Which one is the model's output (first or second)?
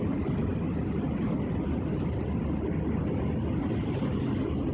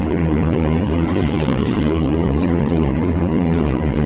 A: second